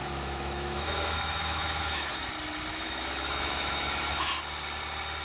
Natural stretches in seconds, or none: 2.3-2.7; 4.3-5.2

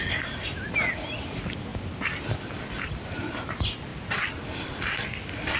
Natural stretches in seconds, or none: 0.0-5.6

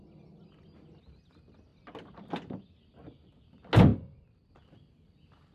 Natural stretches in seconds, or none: 0.0-5.5

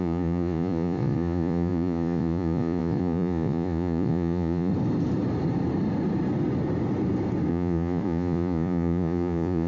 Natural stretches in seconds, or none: 4.7-7.5

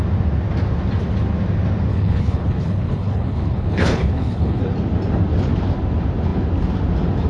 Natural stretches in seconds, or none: 0.0-1.9; 4.6-7.3

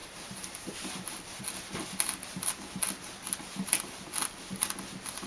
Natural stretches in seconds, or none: 1.4-5.3

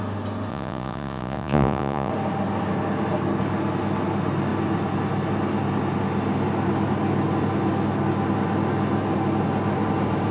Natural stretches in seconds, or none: 0.0-0.5; 2.1-10.3

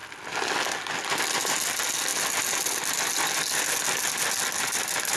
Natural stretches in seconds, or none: 0.0-5.2